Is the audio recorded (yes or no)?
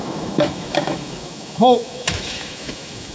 no